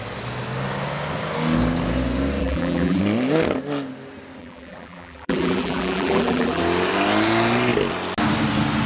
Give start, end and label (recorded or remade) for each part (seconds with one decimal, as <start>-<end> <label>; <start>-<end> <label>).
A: 0.0-2.4 recorded; 2.4-3.0 remade; 3.0-4.4 recorded; 4.4-6.6 remade; 6.6-8.9 recorded